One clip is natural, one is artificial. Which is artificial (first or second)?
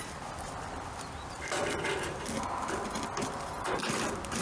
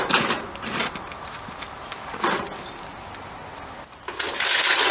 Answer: first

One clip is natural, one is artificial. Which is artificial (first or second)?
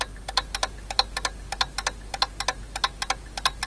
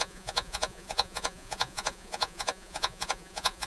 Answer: second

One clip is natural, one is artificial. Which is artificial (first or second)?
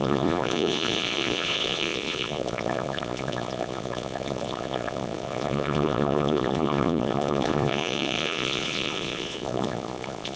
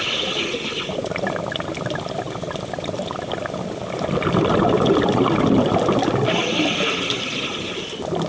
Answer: first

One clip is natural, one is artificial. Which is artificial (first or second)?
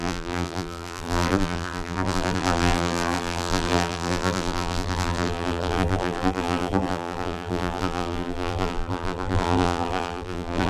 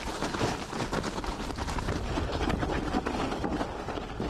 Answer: first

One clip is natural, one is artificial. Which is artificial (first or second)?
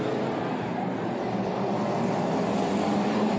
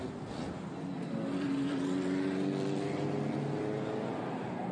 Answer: first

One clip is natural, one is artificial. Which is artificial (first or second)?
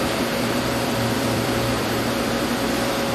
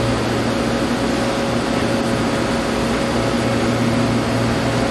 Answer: first